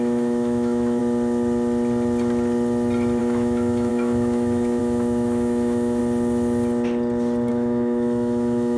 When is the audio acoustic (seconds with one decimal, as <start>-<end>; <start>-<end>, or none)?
1.0-3.2; 6.0-7.5